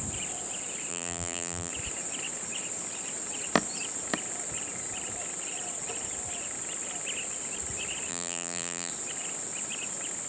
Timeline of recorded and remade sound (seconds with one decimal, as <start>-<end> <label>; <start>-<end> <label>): 0.0-0.9 recorded; 0.9-1.7 remade; 1.7-8.1 recorded; 8.1-8.9 remade; 8.9-10.3 recorded